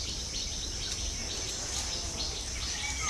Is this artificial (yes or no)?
no